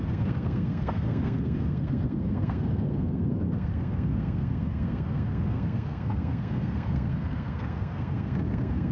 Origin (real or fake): fake